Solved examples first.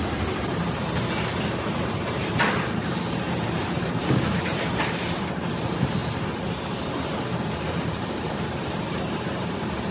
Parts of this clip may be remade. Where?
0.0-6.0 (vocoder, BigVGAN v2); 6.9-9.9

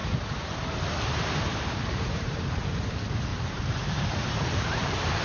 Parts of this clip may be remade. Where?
0.0-0.6 (vocoder, BigVGAN v2); 1.5-2.6; 3.3-5.2

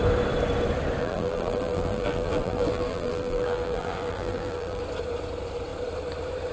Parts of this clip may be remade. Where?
1.0-4.8 (vocoder, BigVGAN v2)

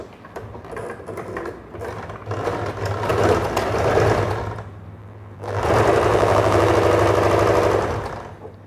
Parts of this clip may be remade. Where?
5.0-5.6 (vocoder, BigVGAN v2); 6.1-6.7